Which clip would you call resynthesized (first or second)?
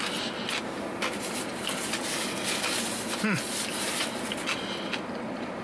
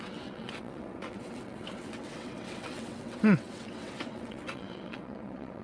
second